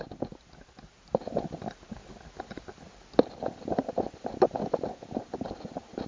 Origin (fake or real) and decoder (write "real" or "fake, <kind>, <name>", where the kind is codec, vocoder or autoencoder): real